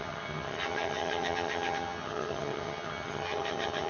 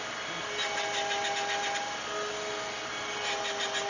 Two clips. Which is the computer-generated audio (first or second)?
first